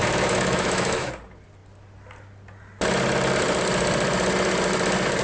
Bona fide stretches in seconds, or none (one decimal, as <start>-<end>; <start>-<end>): 1.1-5.2